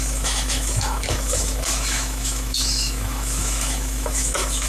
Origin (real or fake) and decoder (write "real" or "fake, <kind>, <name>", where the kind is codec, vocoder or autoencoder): fake, autoencoder, DAC-VAE